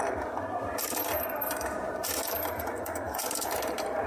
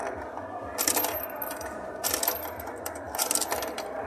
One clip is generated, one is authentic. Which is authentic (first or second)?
second